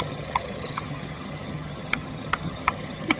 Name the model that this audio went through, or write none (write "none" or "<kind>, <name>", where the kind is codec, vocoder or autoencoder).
vocoder, HiFi-GAN